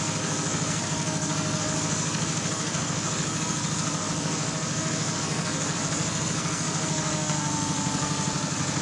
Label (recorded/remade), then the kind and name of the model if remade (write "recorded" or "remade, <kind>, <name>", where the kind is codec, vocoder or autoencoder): remade, codec, SNAC